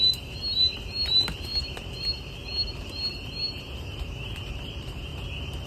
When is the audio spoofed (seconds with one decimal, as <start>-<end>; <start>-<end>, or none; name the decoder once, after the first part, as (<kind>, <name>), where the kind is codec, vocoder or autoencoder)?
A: 0.0-1.5 (vocoder, BigVGAN v2); 3.8-5.1

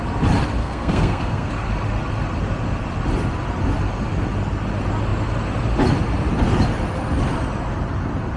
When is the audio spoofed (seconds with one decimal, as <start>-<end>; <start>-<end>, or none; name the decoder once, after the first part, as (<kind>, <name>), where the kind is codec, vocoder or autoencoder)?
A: 0.6-1.5 (codec, SNAC)

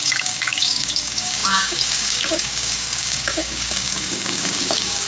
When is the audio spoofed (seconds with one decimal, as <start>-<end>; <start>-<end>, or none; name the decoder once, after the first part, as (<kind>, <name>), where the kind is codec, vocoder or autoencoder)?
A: 0.0-5.1 (codec, DAC)

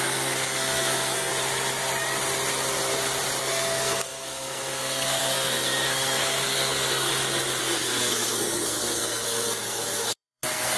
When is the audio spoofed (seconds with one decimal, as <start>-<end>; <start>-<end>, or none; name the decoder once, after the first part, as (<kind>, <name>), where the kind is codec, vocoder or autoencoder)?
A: 0.0-1.3 (codec, SNAC); 3.4-7.1; 7.6-10.8

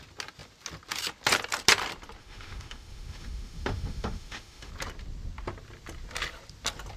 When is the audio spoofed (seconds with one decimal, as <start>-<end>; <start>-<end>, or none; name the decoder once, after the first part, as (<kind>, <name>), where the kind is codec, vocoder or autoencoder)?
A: 2.2-4.7 (autoencoder, DAC-VAE)

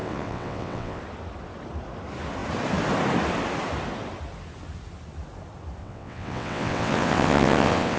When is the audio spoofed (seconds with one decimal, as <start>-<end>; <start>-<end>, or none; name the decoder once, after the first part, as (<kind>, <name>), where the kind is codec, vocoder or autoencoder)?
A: 0.0-1.0 (vocoder, WaveNeXt); 5.8-8.0

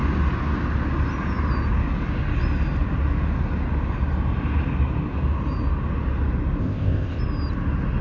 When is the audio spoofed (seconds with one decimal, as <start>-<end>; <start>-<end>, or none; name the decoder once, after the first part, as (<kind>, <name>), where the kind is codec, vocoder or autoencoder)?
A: 6.6-7.2 (codec, ZipCodec)